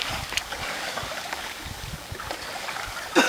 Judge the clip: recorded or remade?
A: remade